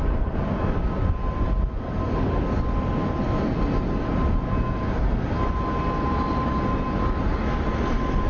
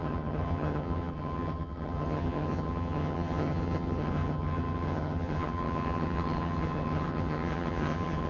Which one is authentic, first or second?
first